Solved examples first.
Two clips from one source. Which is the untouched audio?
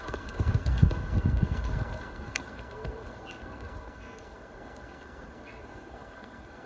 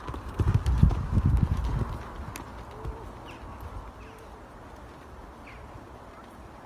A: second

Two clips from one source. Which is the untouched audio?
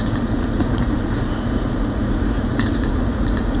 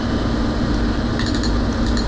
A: second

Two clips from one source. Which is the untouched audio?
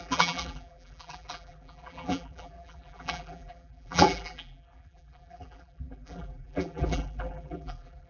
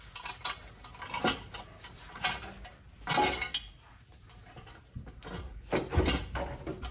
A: second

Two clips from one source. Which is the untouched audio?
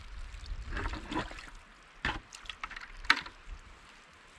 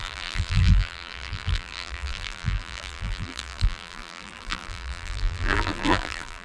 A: first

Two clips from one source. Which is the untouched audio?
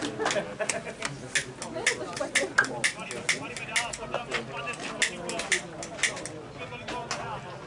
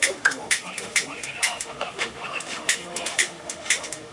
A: first